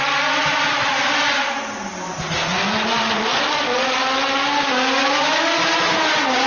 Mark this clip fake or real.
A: real